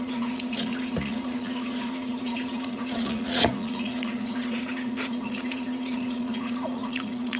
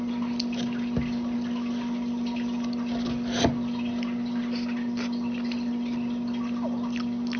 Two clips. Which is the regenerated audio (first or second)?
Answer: first